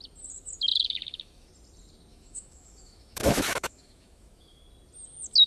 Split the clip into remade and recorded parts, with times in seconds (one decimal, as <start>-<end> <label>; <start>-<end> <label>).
0.0-0.7 recorded; 0.7-1.5 remade; 1.5-2.1 recorded; 2.1-4.6 remade; 4.6-5.5 recorded